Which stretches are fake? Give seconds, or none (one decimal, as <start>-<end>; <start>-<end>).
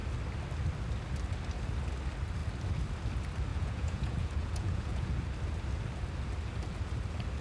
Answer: 3.5-5.2